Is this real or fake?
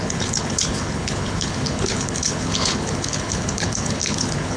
fake